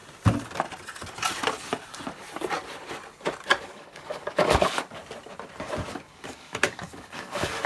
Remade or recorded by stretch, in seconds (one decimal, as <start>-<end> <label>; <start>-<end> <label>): 0.0-3.6 recorded; 3.6-5.0 remade; 5.0-5.9 recorded; 5.9-7.7 remade